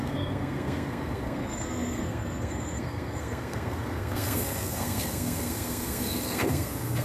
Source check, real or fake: fake